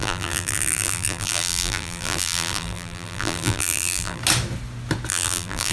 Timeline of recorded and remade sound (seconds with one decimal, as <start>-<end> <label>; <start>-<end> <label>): 0.0-4.2 remade; 4.2-5.1 recorded; 5.1-5.7 remade